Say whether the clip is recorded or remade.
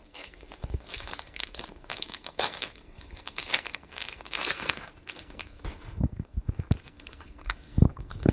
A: remade